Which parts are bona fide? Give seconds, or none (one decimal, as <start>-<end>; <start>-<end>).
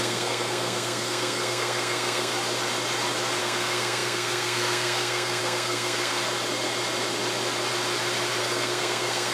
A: 2.3-3.4; 6.2-8.4